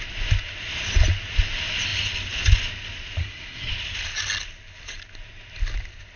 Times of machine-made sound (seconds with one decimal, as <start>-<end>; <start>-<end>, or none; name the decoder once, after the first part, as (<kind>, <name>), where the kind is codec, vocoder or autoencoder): 3.2-3.7 (codec, SNAC)